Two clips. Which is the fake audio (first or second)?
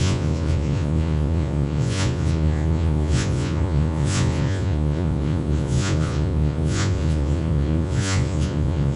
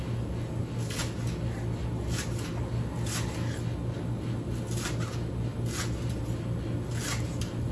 first